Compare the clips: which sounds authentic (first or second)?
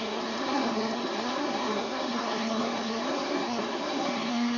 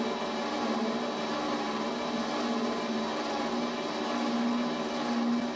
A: second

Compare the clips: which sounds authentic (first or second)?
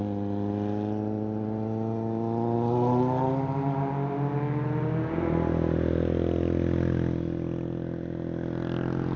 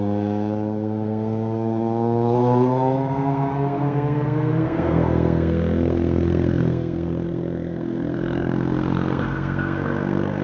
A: first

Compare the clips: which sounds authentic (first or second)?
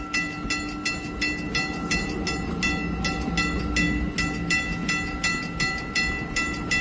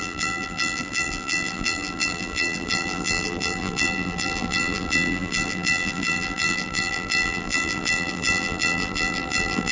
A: first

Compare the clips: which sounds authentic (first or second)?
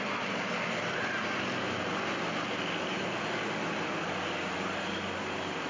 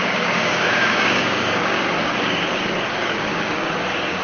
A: first